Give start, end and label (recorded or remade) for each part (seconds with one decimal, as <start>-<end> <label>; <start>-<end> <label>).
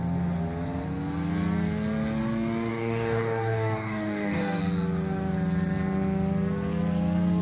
0.0-2.7 recorded; 2.7-4.6 remade; 4.6-7.4 recorded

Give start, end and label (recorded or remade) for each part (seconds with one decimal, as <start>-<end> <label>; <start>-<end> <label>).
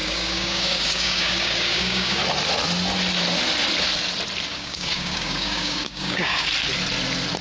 0.0-2.2 remade; 2.2-4.5 recorded; 4.5-6.5 remade; 6.5-7.4 recorded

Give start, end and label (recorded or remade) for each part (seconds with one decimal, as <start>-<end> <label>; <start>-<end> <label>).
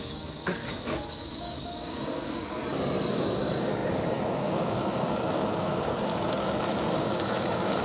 0.0-2.6 remade; 2.6-3.1 recorded; 3.1-7.8 remade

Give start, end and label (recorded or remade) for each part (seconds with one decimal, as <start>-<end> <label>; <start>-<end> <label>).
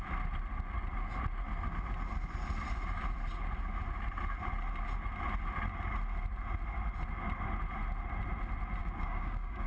0.0-8.8 recorded; 8.8-9.7 remade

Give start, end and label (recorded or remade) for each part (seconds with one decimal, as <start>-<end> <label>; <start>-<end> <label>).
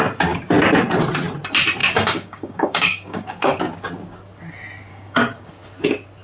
0.0-1.8 recorded; 1.8-3.6 remade; 3.6-4.9 recorded; 4.9-5.5 remade; 5.5-6.2 recorded